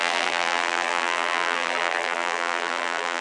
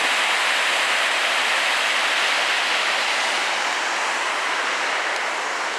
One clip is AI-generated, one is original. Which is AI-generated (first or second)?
first